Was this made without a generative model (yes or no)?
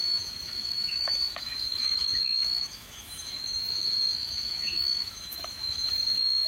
no